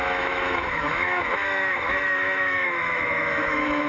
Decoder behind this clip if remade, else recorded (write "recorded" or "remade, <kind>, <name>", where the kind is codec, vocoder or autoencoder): remade, autoencoder, DAC-VAE